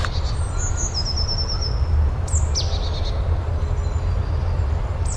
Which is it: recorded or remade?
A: recorded